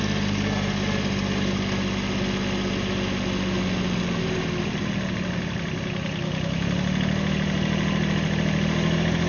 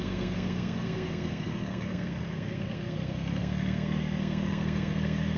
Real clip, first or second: first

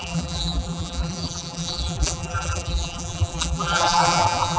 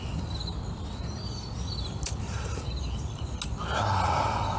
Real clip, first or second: second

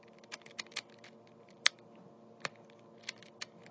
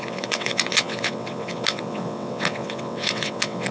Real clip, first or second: first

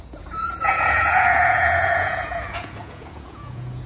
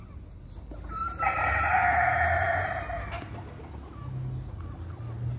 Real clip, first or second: second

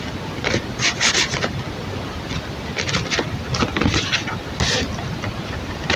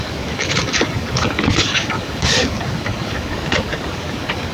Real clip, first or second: first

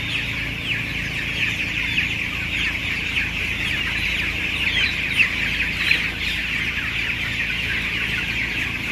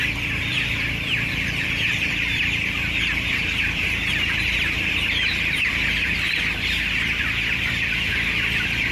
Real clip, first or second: first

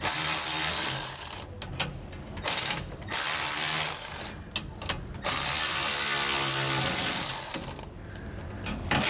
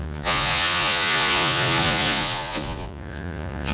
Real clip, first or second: first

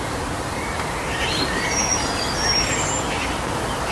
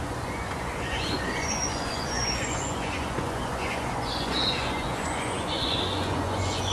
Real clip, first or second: first